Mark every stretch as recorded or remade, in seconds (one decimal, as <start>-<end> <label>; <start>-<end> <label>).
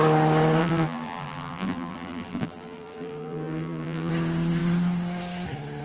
0.0-0.6 recorded; 0.6-4.1 remade; 4.1-5.8 recorded